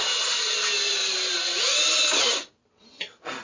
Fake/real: real